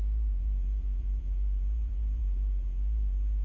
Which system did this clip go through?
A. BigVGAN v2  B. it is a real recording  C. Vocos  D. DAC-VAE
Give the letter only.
A